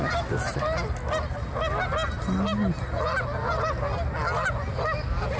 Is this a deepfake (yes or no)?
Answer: no